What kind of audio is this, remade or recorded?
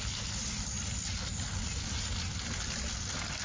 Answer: recorded